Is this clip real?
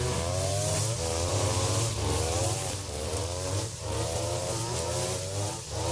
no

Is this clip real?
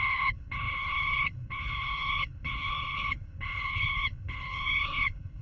no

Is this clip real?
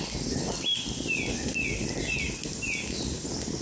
yes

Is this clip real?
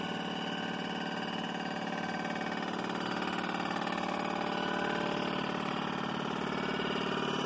yes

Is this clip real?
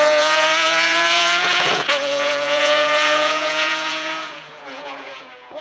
no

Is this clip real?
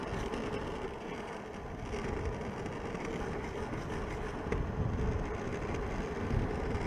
yes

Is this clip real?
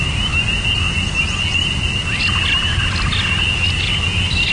yes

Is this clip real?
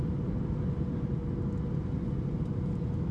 yes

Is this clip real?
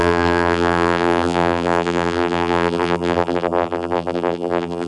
no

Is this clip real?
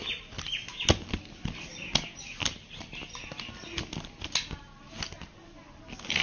yes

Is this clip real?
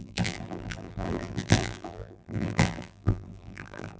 no